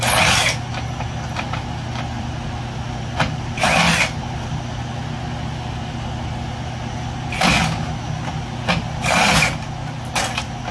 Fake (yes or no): no